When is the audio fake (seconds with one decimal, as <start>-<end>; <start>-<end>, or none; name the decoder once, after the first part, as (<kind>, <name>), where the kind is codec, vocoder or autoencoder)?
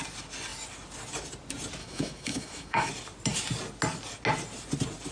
1.8-2.9 (autoencoder, DAC-VAE)